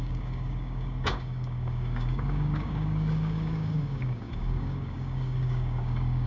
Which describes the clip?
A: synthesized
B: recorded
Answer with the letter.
A